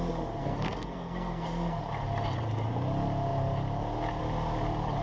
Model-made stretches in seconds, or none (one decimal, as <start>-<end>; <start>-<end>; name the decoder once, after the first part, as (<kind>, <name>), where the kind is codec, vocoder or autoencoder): 0.4-1.8 (codec, SNAC)